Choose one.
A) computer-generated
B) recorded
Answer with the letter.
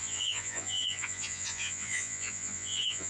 A